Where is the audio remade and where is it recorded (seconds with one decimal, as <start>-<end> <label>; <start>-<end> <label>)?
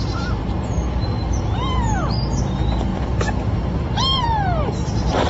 0.0-0.4 recorded; 0.4-2.2 remade; 2.2-2.9 recorded; 2.9-5.3 remade